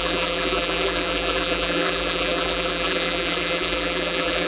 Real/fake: fake